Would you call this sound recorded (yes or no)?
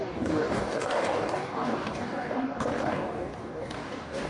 no